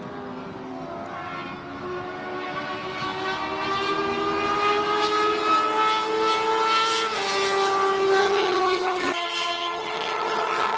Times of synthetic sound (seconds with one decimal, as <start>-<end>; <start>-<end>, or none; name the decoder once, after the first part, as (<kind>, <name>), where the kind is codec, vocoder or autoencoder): 8.2-10.8 (vocoder, HiFi-GAN)